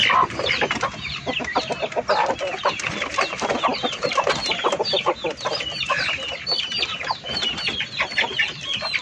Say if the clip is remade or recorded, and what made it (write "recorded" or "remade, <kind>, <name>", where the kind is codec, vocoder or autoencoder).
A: recorded